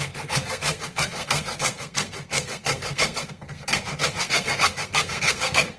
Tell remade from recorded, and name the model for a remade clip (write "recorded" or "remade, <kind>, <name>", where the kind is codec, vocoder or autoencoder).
remade, codec, SNAC